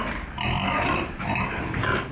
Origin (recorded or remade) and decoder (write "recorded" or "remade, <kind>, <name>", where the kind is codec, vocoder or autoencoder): recorded